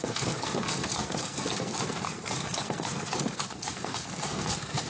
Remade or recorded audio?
remade